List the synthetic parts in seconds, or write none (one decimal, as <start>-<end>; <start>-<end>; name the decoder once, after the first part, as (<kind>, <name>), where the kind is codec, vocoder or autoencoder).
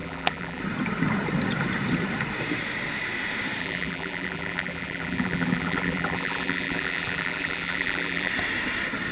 0.0-0.6 (vocoder, BigVGAN v2); 3.6-8.3